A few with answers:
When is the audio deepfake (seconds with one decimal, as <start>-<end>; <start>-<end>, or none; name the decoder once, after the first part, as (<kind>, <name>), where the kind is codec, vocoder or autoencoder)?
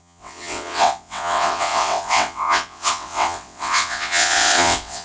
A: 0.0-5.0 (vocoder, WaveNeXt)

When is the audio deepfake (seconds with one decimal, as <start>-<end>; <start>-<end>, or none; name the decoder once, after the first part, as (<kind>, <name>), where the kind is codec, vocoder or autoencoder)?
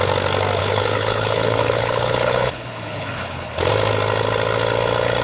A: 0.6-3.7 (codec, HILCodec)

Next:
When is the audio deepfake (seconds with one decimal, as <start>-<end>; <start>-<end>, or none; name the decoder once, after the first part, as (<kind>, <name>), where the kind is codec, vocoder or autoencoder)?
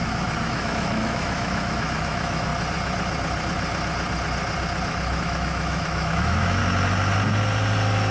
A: 0.0-2.5 (autoencoder, DAC-VAE); 5.2-6.6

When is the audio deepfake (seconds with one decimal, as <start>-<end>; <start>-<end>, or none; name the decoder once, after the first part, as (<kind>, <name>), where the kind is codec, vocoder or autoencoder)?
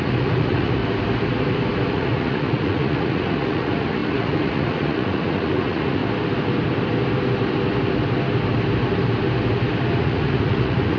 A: 0.0-0.8 (vocoder, Vocos); 1.9-6.0; 10.0-11.0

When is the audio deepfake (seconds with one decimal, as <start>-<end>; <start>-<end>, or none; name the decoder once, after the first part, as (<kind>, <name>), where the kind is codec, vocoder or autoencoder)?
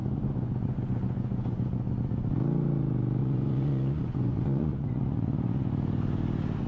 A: 0.0-1.9 (vocoder, Vocos); 3.2-5.7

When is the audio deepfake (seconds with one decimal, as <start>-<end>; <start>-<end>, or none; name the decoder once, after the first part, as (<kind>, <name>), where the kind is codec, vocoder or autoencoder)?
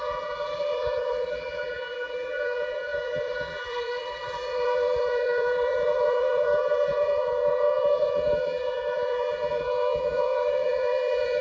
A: 0.0-11.4 (vocoder, BigVGAN v2)